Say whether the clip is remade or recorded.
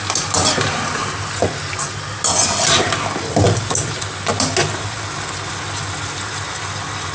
recorded